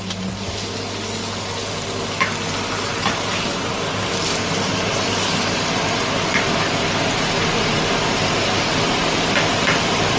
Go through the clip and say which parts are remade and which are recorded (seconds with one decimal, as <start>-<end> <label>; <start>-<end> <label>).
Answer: 0.0-2.9 recorded; 2.9-3.7 remade; 3.7-10.2 recorded